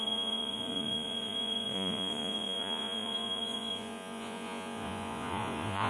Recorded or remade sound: remade